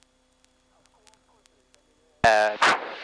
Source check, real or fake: real